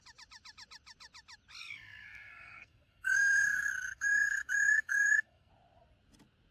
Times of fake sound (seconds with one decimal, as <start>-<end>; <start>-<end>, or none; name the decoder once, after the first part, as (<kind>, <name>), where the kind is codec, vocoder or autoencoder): 1.6-5.5 (codec, SNAC)